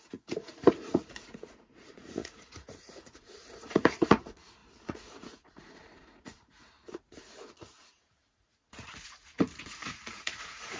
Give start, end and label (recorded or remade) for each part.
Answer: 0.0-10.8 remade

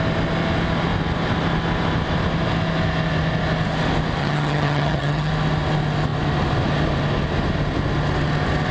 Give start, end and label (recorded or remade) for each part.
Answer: 0.0-4.2 recorded; 4.2-5.3 remade; 5.3-8.7 recorded

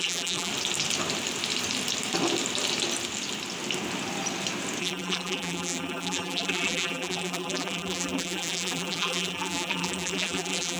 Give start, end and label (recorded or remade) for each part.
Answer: 0.0-0.5 remade; 0.5-4.8 recorded; 4.8-10.8 remade

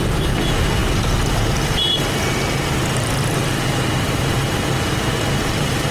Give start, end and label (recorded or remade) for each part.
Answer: 0.0-1.9 remade; 1.9-5.4 recorded; 5.4-5.9 remade

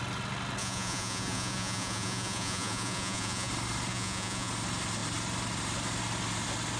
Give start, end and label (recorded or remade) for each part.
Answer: 0.0-0.6 recorded; 0.6-3.5 remade; 3.5-3.9 recorded; 3.9-4.5 remade; 4.5-6.8 recorded

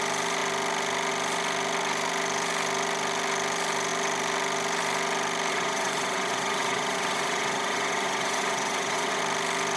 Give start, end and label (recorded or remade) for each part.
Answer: 0.0-5.5 recorded; 5.5-9.2 remade; 9.2-9.8 recorded

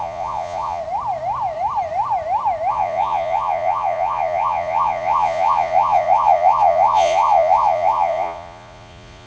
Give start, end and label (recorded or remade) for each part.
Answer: 0.0-0.8 remade; 0.8-2.7 recorded; 2.7-9.3 remade